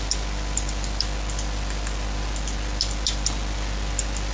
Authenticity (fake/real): real